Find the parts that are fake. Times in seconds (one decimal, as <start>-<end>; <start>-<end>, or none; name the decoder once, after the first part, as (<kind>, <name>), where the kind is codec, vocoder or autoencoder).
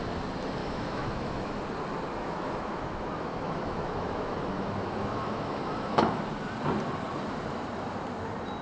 0.6-1.6 (autoencoder, DAC-VAE); 2.1-6.2